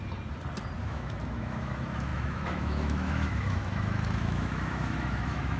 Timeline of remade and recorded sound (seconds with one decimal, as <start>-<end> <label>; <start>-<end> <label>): 0.0-0.8 recorded; 0.8-5.6 remade